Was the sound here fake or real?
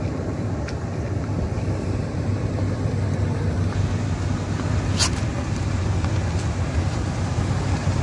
real